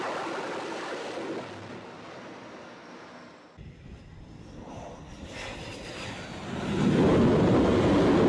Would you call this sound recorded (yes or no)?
yes